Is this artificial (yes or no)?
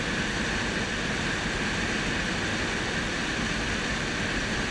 no